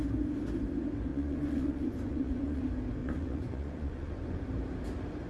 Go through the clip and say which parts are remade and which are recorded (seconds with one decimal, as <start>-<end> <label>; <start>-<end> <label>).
0.0-1.1 recorded; 1.1-2.6 remade; 2.6-3.0 recorded; 3.0-4.4 remade; 4.4-5.3 recorded